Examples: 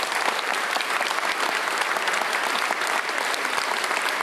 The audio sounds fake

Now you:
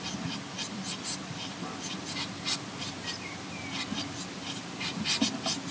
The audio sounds real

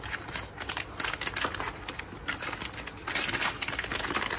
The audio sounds real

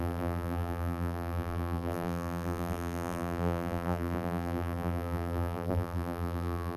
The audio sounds fake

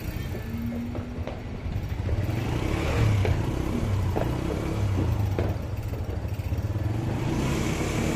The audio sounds real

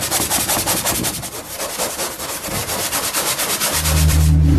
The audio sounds fake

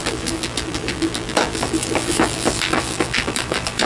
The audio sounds fake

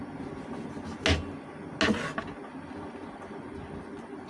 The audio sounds real